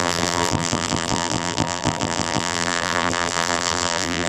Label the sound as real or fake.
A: fake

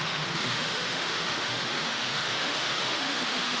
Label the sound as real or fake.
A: fake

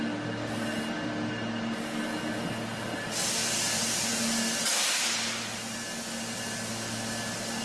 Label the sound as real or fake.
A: real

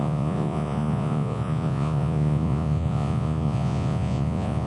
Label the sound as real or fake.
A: fake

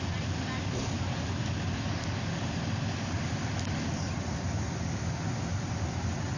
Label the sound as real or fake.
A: real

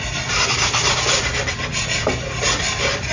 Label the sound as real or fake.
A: fake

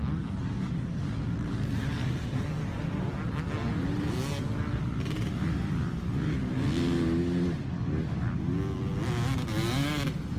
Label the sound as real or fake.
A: real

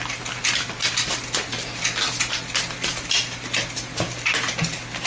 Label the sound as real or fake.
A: real